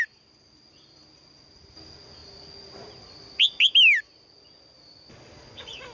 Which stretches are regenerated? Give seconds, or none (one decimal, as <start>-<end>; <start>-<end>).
none